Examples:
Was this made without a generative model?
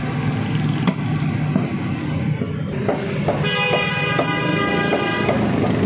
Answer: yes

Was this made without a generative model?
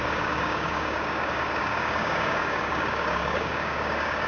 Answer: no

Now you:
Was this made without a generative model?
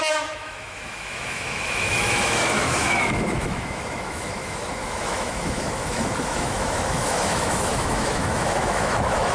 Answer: no